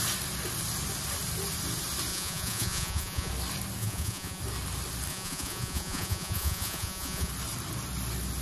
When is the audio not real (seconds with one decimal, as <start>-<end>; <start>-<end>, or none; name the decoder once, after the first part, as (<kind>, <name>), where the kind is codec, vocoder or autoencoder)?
2.1-3.3 (vocoder, Vocos); 3.8-4.4; 5.1-7.3